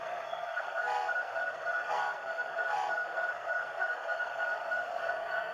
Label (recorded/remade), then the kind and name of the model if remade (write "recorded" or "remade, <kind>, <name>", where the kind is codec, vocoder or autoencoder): remade, codec, SNAC